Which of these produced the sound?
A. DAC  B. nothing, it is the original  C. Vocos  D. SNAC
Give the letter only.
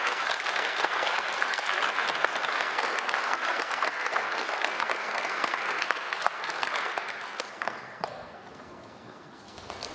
D